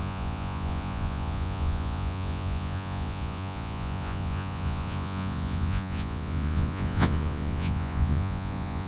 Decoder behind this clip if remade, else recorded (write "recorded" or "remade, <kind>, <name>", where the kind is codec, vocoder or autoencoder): remade, vocoder, Vocos